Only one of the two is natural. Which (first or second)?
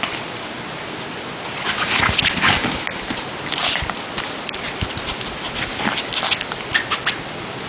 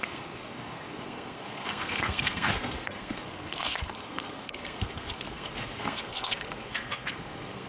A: first